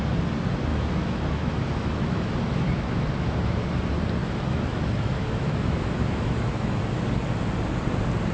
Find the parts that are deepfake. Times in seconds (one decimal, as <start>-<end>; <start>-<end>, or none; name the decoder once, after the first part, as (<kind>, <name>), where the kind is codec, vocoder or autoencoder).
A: 0.7-3.6 (autoencoder, DAC-VAE); 4.2-6.8